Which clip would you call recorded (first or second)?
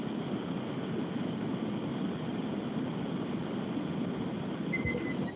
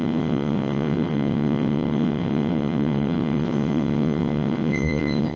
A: first